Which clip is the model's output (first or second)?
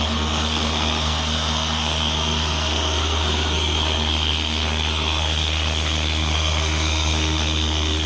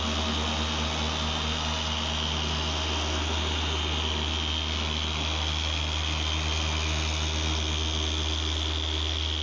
first